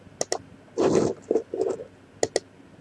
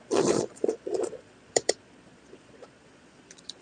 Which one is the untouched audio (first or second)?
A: first